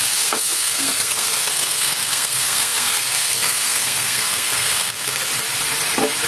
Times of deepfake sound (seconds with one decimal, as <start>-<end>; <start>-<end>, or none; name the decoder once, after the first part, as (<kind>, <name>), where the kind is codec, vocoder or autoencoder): 0.0-5.3 (codec, SNAC)